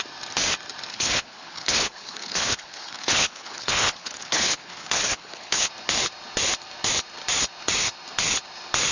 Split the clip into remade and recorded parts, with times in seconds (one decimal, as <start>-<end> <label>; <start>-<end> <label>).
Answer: 0.0-0.9 recorded; 0.9-5.7 remade; 5.7-8.9 recorded